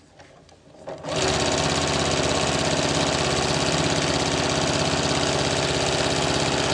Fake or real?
real